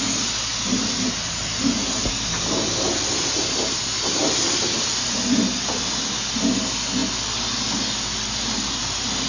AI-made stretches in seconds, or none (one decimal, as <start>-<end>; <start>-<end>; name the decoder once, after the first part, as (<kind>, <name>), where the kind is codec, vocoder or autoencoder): none